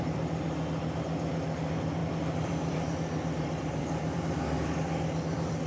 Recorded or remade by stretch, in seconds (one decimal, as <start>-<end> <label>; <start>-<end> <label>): 0.0-2.0 recorded; 2.0-4.2 remade; 4.2-5.7 recorded